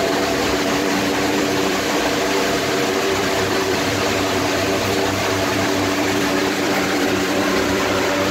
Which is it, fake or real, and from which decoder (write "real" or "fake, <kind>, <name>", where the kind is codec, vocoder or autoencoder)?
fake, vocoder, BigVGAN v2